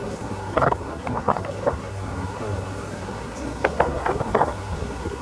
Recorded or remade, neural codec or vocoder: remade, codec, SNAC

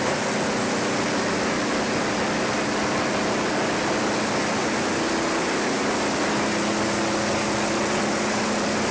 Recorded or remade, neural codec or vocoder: recorded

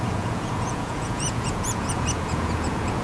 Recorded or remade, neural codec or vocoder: remade, vocoder, Vocos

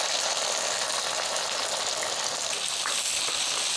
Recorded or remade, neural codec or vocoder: recorded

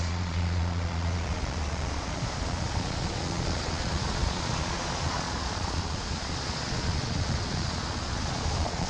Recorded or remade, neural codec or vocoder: remade, vocoder, Vocos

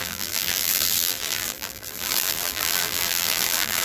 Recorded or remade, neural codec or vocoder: remade, vocoder, BigVGAN v2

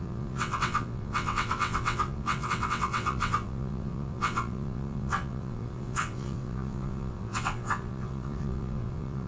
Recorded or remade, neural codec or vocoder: remade, vocoder, WaveNeXt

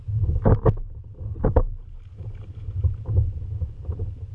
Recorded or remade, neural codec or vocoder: recorded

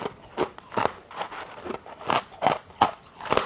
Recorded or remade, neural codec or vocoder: recorded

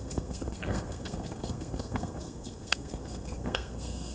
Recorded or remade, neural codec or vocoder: remade, codec, SNAC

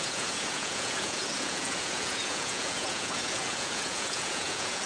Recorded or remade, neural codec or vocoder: remade, vocoder, Vocos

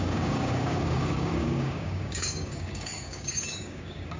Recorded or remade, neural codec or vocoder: remade, codec, DAC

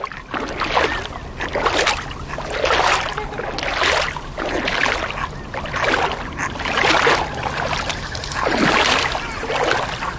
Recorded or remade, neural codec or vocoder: recorded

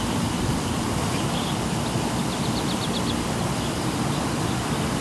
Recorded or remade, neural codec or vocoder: recorded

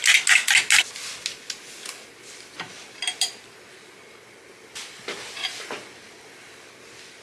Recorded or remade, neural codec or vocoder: recorded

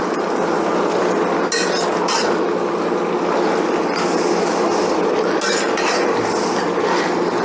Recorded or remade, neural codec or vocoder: recorded